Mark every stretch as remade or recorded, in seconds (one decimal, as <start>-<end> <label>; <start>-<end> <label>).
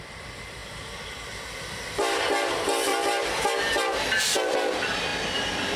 0.0-2.9 recorded; 2.9-3.6 remade; 3.6-5.8 recorded